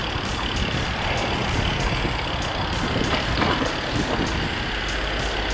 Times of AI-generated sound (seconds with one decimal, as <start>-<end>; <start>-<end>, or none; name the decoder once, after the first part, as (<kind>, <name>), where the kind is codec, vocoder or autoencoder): none